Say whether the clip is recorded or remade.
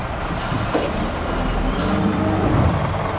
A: remade